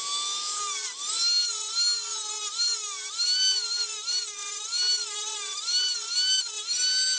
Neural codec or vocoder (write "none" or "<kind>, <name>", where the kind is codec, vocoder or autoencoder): none